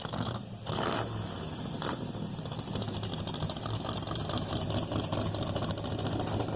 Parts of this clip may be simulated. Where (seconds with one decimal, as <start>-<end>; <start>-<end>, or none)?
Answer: none